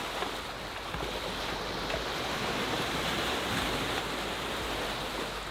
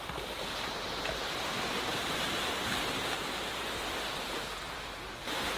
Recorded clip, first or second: first